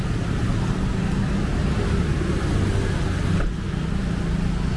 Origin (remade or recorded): recorded